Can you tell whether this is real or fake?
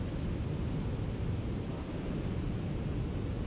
real